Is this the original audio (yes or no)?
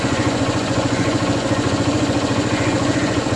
no